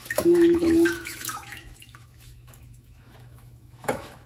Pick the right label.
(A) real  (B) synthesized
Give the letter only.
B